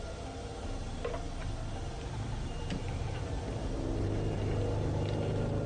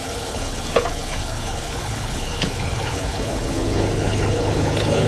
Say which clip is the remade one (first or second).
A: second